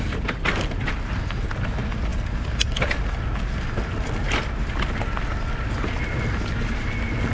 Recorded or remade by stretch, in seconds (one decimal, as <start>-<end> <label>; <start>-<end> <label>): 0.0-7.3 recorded